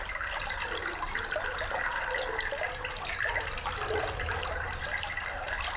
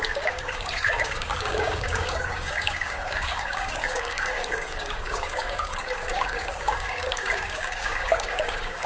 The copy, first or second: second